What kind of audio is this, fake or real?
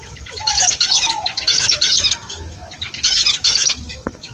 fake